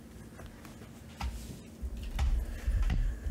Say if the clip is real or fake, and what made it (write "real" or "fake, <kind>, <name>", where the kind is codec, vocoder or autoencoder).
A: real